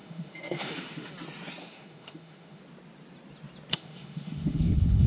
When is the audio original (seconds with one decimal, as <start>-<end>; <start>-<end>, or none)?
1.1-1.6; 2.6-3.7